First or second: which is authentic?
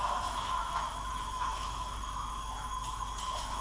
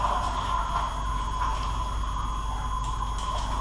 second